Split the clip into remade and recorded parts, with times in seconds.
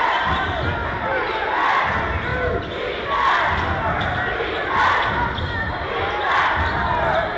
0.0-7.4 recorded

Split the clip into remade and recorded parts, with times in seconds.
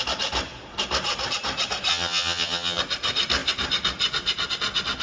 0.0-1.9 recorded; 1.9-2.8 remade; 2.8-5.0 recorded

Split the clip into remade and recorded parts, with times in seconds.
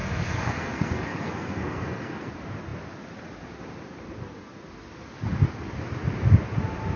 0.0-2.3 remade; 2.3-7.0 recorded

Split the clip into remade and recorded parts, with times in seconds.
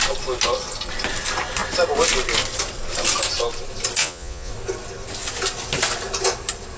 0.0-4.0 recorded; 4.0-4.5 remade; 4.5-6.8 recorded